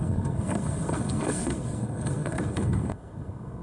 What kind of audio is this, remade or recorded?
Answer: remade